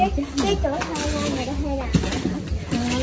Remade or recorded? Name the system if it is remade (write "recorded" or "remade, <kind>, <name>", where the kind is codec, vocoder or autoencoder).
recorded